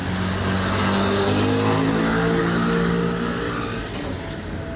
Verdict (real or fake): real